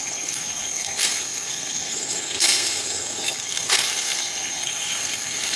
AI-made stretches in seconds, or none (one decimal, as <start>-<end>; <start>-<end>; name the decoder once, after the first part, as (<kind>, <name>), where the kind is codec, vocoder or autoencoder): 0.0-5.6 (codec, SNAC)